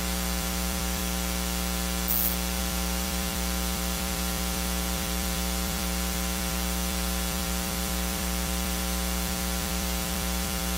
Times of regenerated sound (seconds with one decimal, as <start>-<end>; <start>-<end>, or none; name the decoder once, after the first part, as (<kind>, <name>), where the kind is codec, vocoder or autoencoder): 0.0-1.0 (vocoder, BigVGAN v2); 2.6-10.8